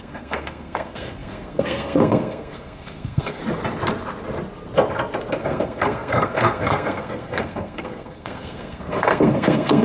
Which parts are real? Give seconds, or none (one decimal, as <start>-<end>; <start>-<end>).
3.4-5.4